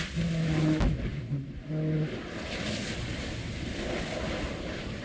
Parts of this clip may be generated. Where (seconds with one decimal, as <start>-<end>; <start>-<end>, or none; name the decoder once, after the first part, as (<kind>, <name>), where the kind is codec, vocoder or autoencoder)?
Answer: none